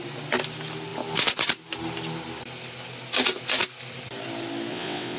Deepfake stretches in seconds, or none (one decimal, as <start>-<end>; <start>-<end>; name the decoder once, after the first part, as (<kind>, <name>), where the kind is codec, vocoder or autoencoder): 4.7-5.2 (vocoder, WaveNeXt)